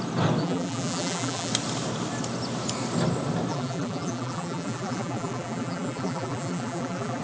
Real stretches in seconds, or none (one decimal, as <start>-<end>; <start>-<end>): 0.0-0.4; 1.5-3.5